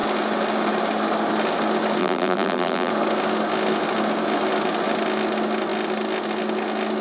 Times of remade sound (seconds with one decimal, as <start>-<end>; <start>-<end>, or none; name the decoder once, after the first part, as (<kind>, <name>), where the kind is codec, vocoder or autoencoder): 2.0-2.9 (vocoder, BigVGAN v2)